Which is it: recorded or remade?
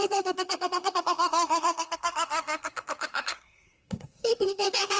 remade